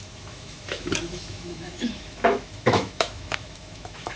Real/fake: fake